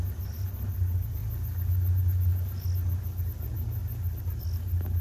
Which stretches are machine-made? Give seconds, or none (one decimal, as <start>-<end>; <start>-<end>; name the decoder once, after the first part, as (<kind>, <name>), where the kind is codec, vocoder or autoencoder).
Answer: none